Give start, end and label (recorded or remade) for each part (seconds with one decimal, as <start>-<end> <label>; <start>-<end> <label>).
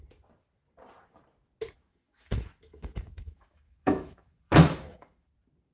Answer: 0.0-1.9 recorded; 1.9-5.3 remade; 5.3-5.7 recorded